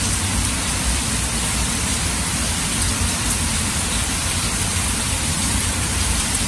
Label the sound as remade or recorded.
remade